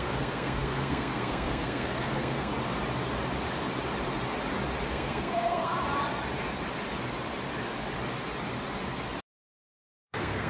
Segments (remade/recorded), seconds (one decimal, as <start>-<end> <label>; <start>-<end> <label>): 0.0-2.5 remade; 2.5-4.9 recorded; 4.9-5.7 remade; 5.7-9.2 recorded; 9.2-10.5 remade